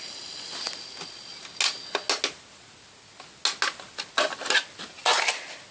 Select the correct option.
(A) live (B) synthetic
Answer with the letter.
A